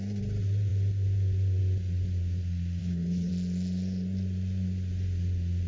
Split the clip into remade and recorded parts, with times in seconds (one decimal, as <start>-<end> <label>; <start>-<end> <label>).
0.0-2.8 recorded; 2.8-3.3 remade; 3.3-5.7 recorded